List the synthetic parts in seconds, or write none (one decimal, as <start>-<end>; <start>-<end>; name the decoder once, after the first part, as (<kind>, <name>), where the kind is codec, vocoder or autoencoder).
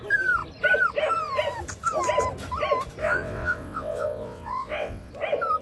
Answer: 3.0-5.1 (vocoder, WaveNeXt)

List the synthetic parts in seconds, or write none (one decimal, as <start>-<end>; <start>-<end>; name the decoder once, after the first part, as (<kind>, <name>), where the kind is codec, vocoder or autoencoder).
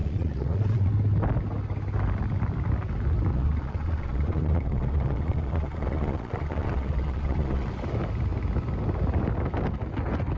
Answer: 0.0-0.9 (vocoder, Vocos); 3.3-7.7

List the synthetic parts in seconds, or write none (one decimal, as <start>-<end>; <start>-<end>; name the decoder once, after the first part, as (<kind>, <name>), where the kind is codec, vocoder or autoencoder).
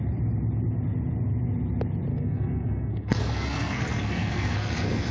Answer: 2.1-5.1 (codec, SNAC)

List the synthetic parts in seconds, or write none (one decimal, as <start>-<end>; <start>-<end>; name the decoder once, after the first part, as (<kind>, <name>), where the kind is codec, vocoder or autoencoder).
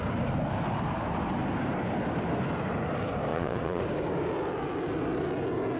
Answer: 3.3-3.8 (vocoder, Vocos)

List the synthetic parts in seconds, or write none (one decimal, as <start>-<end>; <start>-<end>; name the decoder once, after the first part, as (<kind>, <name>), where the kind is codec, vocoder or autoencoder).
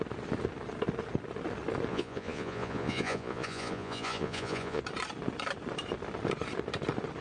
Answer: 1.9-4.8 (vocoder, Vocos)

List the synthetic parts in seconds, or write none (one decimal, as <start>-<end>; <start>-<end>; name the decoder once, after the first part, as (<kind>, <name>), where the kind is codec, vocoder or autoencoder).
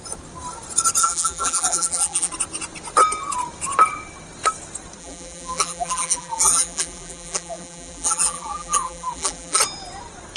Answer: 1.0-2.3 (vocoder, BigVGAN v2); 5.0-9.6